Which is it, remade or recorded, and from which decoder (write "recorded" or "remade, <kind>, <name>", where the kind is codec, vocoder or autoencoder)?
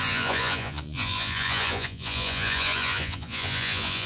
remade, vocoder, Vocos